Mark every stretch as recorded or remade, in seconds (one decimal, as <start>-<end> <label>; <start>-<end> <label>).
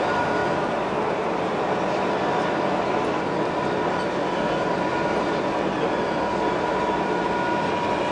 0.0-8.1 recorded